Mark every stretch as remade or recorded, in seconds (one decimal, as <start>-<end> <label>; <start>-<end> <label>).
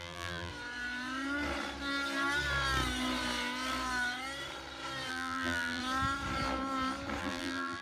0.0-0.5 remade; 0.5-5.1 recorded; 5.1-5.8 remade; 5.8-7.2 recorded; 7.2-7.8 remade